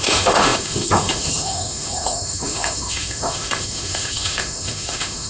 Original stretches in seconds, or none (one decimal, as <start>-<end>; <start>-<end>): none